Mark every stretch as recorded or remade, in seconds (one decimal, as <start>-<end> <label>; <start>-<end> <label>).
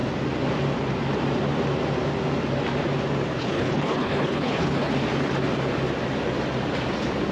0.0-3.4 recorded; 3.4-4.9 remade; 4.9-7.3 recorded